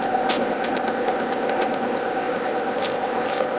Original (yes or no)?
no